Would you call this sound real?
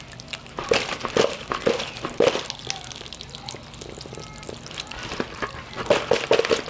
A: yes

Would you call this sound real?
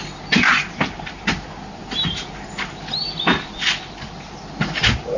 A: yes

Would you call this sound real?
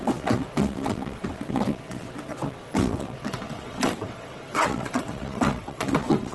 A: no